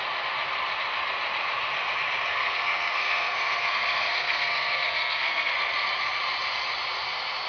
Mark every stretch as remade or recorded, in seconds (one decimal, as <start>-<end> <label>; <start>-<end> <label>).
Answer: 0.0-2.3 recorded; 2.3-5.5 remade; 5.5-7.5 recorded